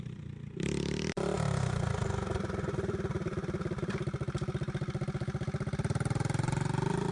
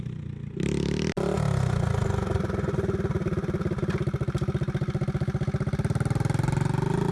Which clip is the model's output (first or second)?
first